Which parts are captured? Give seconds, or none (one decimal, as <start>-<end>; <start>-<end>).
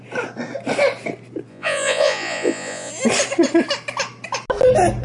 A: 0.0-1.5; 2.9-5.0